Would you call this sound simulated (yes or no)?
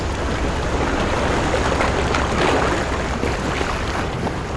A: no